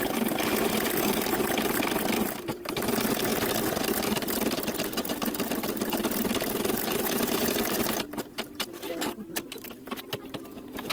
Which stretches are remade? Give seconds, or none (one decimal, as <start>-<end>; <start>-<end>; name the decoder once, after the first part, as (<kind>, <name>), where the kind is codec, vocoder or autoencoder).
0.0-3.3 (vocoder, BigVGAN v2); 3.9-10.9